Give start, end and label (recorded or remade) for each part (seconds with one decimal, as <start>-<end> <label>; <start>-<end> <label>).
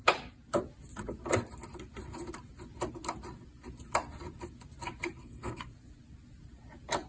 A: 0.0-5.2 recorded; 5.2-5.7 remade; 5.7-7.1 recorded